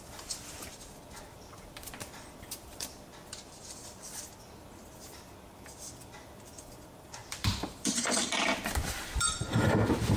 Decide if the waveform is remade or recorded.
remade